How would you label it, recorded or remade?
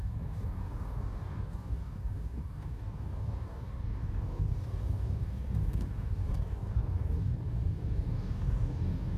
remade